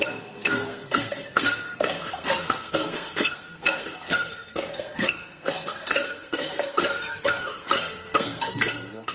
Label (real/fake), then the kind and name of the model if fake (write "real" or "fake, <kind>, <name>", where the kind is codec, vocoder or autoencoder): fake, codec, SNAC